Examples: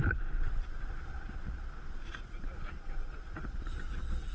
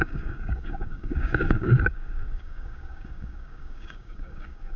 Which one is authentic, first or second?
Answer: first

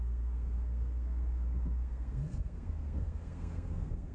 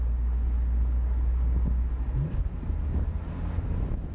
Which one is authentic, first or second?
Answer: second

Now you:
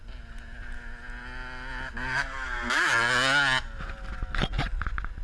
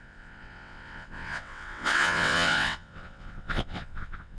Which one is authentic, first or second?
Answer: first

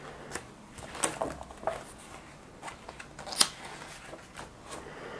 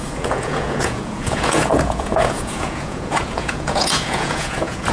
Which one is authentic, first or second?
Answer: first